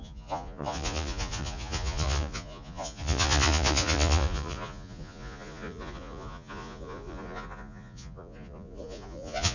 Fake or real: fake